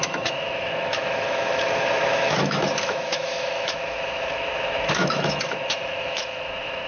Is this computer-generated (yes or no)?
yes